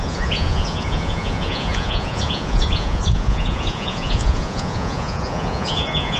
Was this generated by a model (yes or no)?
yes